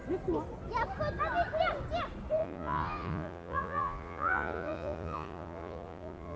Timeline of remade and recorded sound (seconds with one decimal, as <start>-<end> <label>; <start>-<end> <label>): 0.0-2.4 recorded; 2.4-6.4 remade